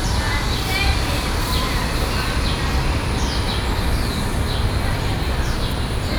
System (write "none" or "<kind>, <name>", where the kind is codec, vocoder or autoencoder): vocoder, BigVGAN v2